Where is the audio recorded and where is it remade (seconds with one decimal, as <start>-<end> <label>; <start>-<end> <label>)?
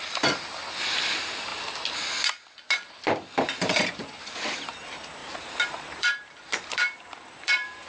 0.0-5.2 recorded; 5.2-7.9 remade